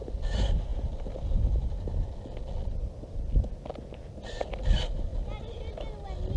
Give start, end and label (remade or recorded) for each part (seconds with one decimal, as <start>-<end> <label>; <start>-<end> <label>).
0.0-6.4 recorded